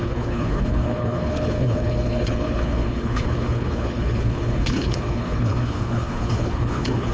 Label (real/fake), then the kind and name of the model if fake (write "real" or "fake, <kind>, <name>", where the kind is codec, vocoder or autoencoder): fake, codec, HILCodec